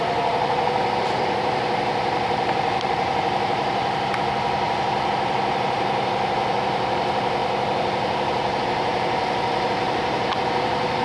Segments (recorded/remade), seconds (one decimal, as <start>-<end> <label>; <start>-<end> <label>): 0.0-7.4 remade; 7.4-8.6 recorded; 8.6-11.0 remade